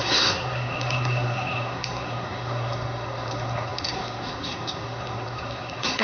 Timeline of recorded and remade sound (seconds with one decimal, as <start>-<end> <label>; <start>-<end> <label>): 0.0-6.0 remade